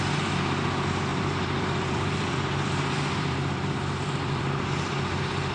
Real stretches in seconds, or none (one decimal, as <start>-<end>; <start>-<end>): 0.0-1.1; 4.4-5.5